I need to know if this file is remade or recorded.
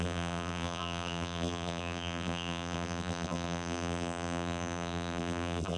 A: remade